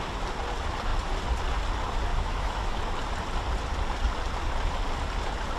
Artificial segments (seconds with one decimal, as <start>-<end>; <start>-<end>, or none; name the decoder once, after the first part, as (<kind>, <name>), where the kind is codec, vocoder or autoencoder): 2.1-2.8 (autoencoder, DAC-VAE)